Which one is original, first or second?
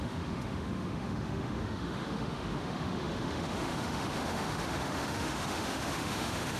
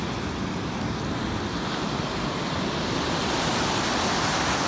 second